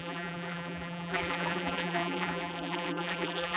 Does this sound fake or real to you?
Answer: fake